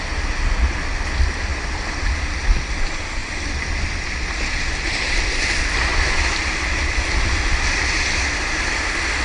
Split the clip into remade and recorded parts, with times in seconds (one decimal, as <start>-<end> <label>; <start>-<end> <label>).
0.0-9.2 recorded